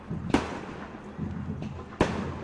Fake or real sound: real